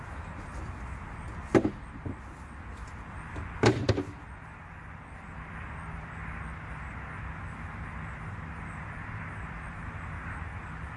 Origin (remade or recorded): recorded